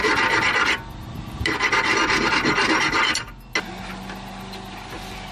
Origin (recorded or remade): recorded